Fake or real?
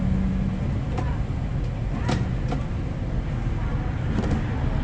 real